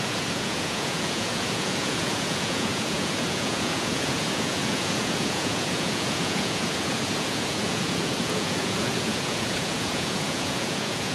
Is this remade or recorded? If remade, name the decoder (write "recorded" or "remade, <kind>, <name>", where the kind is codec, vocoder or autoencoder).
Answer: remade, vocoder, Vocos